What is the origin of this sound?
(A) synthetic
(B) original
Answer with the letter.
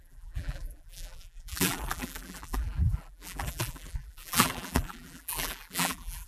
A